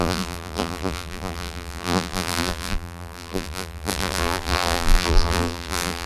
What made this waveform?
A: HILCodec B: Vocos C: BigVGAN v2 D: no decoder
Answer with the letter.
C